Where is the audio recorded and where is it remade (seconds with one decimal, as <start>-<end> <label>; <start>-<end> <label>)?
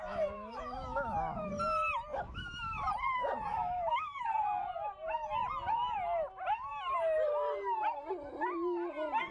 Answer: 0.0-1.5 remade; 1.5-2.1 recorded; 2.1-2.7 remade; 2.7-3.5 recorded; 3.5-4.3 remade; 4.3-9.3 recorded